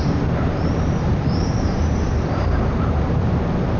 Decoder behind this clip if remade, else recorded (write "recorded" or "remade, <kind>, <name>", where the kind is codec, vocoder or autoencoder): remade, vocoder, BigVGAN v2